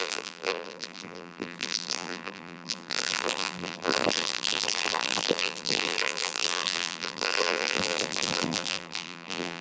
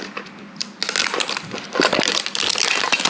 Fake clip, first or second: first